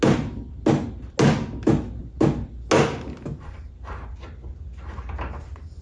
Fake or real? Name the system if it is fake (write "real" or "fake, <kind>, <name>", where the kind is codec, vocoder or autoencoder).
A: real